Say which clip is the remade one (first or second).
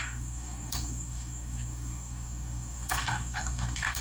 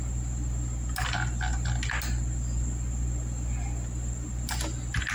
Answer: first